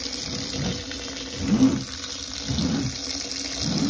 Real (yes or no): yes